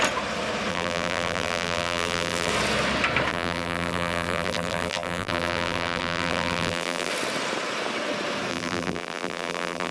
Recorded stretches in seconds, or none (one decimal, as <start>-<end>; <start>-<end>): 0.0-0.7; 2.5-3.3; 7.1-8.5